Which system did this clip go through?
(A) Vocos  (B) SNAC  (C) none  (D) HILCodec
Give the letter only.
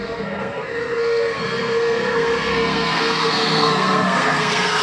B